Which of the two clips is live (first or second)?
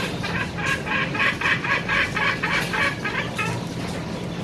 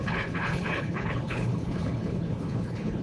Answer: first